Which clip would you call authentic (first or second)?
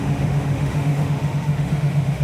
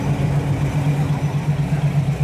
second